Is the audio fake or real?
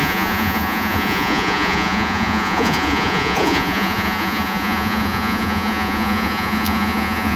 fake